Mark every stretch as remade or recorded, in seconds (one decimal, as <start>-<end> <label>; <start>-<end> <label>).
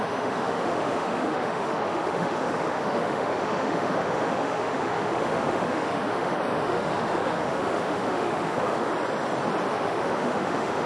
0.0-8.9 remade; 8.9-9.7 recorded; 9.7-10.9 remade